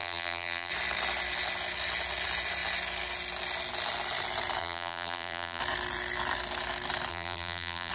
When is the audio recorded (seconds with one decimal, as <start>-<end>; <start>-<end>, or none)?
0.7-4.6; 5.6-7.1